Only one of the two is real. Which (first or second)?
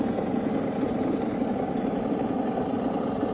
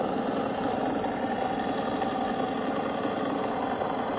second